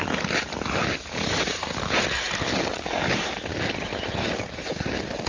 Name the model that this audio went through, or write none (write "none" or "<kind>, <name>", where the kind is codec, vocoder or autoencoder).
none